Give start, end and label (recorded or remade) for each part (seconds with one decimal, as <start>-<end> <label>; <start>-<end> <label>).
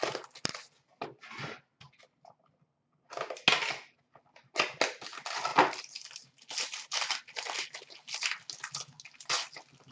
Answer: 0.0-9.9 recorded